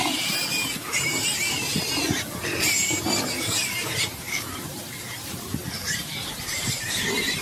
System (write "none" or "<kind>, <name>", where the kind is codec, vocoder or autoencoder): vocoder, BigVGAN v2